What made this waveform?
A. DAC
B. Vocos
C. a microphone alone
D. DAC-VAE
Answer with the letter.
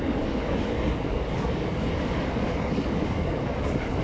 A